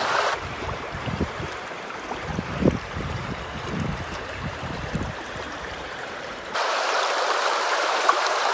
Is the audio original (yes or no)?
no